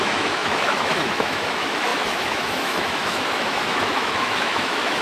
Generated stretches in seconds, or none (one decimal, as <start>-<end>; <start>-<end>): 0.0-5.0

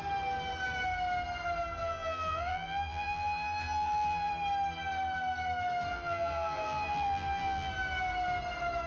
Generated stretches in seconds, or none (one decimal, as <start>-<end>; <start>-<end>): 1.8-4.3; 5.9-7.7